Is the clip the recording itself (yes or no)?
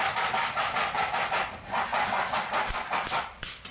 yes